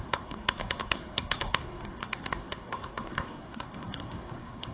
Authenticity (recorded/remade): remade